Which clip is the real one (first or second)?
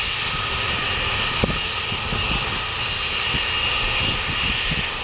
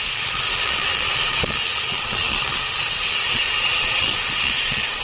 first